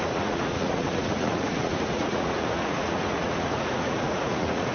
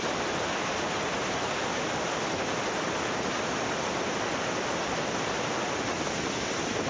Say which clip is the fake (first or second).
first